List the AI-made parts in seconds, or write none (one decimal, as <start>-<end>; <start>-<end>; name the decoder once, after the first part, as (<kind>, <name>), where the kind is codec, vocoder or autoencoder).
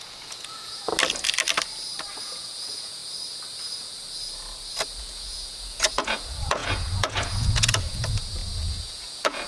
0.0-0.9 (vocoder, Vocos); 2.2-3.0; 5.0-9.5